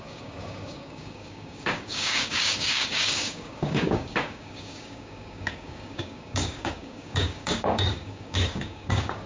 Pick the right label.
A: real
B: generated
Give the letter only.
B